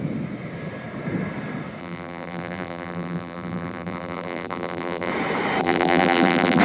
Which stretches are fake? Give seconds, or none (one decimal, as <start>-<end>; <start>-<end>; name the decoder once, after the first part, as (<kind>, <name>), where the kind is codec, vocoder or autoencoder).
1.8-5.1 (vocoder, BigVGAN v2); 5.6-6.6